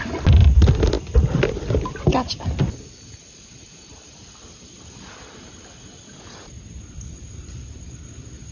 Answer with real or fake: real